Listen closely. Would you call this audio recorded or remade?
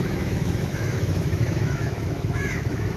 remade